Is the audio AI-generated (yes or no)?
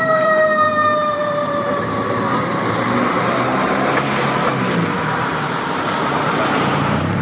yes